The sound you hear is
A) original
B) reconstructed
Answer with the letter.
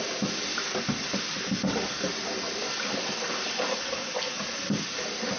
A